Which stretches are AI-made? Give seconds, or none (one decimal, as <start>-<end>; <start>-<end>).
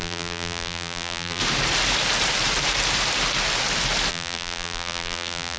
0.0-1.4; 4.1-5.6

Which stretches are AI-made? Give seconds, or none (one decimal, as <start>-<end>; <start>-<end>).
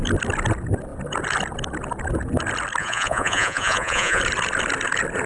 2.8-4.2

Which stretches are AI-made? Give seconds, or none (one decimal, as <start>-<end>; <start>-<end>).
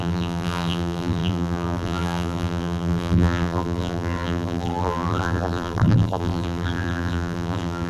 0.0-7.9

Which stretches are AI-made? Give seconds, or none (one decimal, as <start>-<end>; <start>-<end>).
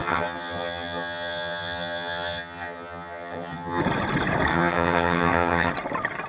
0.0-3.8; 4.5-5.7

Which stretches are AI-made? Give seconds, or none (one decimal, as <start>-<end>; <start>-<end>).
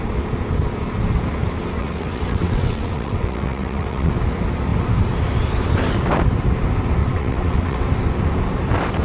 1.8-4.1; 7.0-7.8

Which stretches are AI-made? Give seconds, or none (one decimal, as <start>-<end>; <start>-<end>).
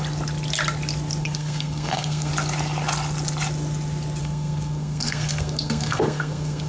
1.2-2.3; 4.2-6.7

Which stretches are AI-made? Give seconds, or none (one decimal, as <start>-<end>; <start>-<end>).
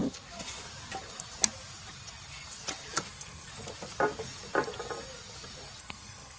3.1-3.5; 5.8-6.4